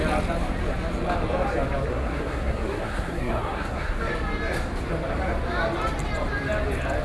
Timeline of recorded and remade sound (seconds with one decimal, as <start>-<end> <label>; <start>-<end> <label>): 0.0-1.9 recorded; 1.9-4.0 remade; 4.0-7.0 recorded